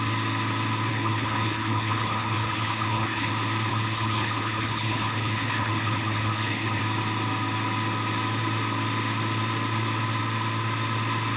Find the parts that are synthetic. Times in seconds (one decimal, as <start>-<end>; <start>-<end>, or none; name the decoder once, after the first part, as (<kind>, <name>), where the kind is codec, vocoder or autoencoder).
0.9-3.3 (codec, HILCodec); 3.7-6.8